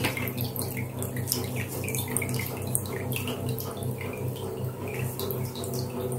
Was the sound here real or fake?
real